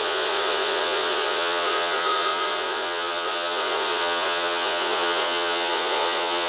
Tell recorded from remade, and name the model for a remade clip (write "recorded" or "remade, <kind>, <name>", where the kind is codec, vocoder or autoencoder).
remade, vocoder, Vocos